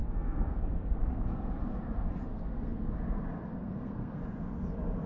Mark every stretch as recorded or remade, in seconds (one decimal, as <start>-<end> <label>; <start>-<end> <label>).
0.0-1.5 remade; 1.5-2.3 recorded; 2.3-2.9 remade; 2.9-3.5 recorded; 3.5-4.2 remade; 4.2-5.1 recorded